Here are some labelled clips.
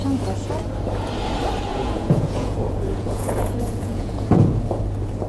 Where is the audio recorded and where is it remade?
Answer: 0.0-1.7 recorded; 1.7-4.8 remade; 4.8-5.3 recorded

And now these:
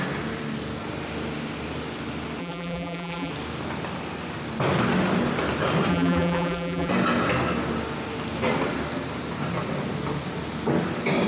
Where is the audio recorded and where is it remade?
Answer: 0.0-2.4 recorded; 2.4-3.3 remade; 3.3-5.9 recorded; 5.9-6.9 remade; 6.9-11.3 recorded

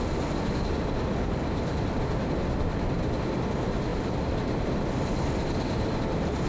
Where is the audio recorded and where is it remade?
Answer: 0.0-6.5 recorded

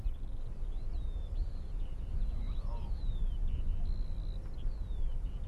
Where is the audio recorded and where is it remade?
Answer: 0.0-1.4 recorded; 1.4-3.0 remade; 3.0-5.5 recorded

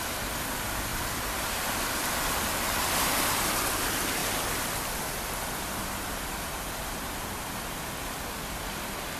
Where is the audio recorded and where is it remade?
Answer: 0.0-0.9 recorded; 0.9-1.7 remade; 1.7-9.2 recorded